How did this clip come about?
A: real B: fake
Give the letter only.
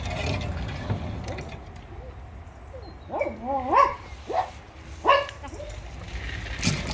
A